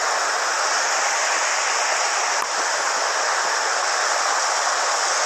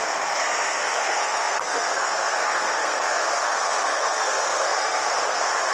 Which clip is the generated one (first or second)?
second